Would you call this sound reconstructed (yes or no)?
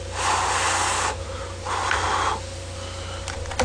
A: no